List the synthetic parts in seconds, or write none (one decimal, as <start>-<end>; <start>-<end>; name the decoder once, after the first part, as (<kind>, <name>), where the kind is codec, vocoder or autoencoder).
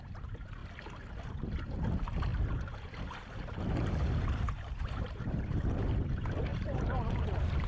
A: 2.3-6.1 (vocoder, BigVGAN v2); 6.5-7.3